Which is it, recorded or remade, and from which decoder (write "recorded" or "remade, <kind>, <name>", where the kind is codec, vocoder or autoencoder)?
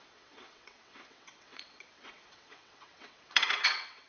remade, vocoder, WaveNeXt